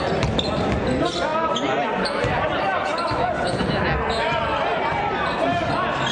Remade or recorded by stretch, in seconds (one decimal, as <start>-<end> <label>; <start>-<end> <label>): 0.0-6.1 recorded